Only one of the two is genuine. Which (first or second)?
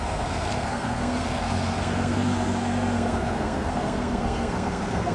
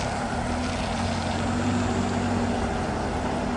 second